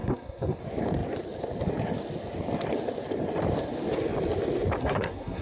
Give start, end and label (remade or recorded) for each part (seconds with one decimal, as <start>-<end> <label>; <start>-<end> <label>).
0.0-0.6 remade; 0.6-4.8 recorded; 4.8-5.4 remade